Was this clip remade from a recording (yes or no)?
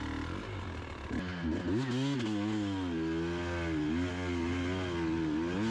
no